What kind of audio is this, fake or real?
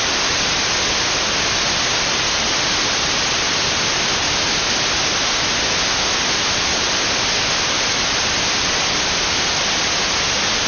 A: real